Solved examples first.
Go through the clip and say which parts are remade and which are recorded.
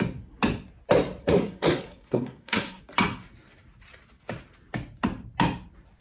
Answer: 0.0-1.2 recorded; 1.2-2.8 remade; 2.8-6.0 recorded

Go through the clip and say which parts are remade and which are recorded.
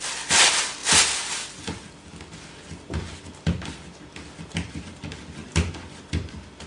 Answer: 0.0-6.7 recorded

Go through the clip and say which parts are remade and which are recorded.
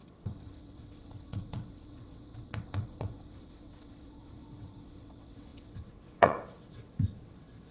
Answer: 0.0-7.7 remade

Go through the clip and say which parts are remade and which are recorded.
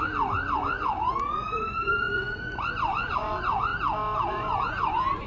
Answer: 0.0-3.7 remade; 3.7-4.3 recorded; 4.3-5.3 remade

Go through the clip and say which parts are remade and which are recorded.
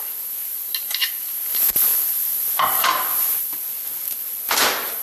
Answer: 0.0-5.0 recorded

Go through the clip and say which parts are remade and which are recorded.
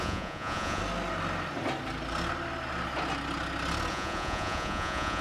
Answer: 0.0-0.8 remade; 0.8-3.9 recorded; 3.9-5.2 remade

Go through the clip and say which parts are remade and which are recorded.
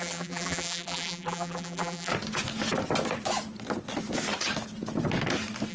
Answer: 0.0-2.1 remade; 2.1-5.7 recorded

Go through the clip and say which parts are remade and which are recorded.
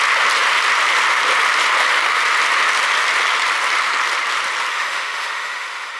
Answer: 0.0-4.7 recorded; 4.7-6.0 remade